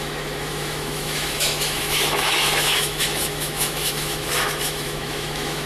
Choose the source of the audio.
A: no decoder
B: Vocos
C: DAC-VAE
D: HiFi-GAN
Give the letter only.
C